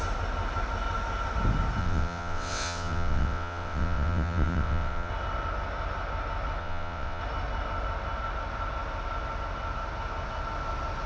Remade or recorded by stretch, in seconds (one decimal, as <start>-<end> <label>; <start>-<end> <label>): 0.0-1.8 recorded; 1.8-5.1 remade; 5.1-6.6 recorded; 6.6-7.2 remade; 7.2-11.1 recorded